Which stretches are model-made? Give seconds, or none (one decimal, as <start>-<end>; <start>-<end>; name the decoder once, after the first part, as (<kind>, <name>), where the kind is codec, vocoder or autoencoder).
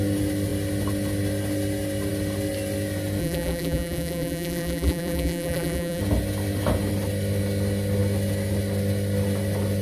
3.2-6.0 (vocoder, BigVGAN v2)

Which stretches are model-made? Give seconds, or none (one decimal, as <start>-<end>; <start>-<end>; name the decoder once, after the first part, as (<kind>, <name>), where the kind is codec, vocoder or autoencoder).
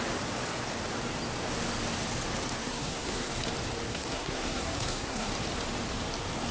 2.6-3.3 (codec, SNAC); 3.9-5.3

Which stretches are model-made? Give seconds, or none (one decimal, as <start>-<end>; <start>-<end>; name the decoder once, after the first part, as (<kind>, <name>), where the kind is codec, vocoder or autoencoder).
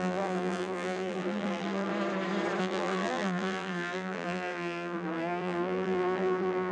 0.0-1.9 (vocoder, BigVGAN v2); 2.6-6.7